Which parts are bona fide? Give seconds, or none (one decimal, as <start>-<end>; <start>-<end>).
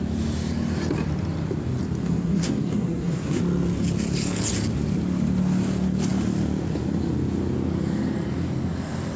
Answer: 0.0-2.0; 3.4-9.2